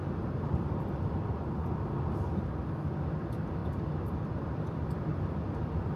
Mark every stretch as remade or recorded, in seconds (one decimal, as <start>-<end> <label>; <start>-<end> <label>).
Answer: 0.0-1.6 remade; 1.6-3.2 recorded; 3.2-3.6 remade; 3.6-4.3 recorded; 4.3-6.0 remade